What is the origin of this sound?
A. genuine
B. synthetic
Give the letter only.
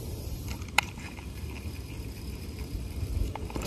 B